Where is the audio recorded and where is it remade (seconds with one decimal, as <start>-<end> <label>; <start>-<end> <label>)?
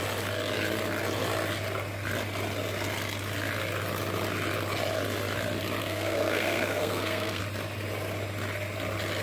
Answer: 0.0-5.8 recorded; 5.8-7.4 remade; 7.4-9.2 recorded